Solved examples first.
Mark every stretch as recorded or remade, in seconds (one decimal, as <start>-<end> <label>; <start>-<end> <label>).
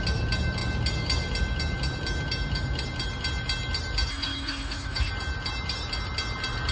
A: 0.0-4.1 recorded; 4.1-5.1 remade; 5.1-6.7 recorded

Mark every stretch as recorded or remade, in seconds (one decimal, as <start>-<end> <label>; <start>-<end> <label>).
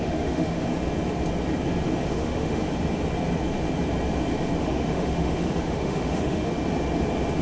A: 0.0-0.7 remade; 0.7-2.1 recorded; 2.1-2.6 remade; 2.6-4.6 recorded; 4.6-6.5 remade; 6.5-7.4 recorded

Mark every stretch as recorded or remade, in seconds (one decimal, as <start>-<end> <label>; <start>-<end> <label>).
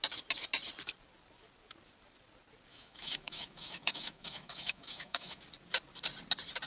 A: 0.0-2.7 recorded; 2.7-5.4 remade; 5.4-6.7 recorded